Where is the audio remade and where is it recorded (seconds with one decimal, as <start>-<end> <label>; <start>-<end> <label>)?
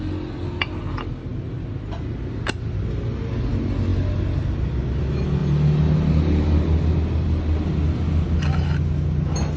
0.0-9.6 recorded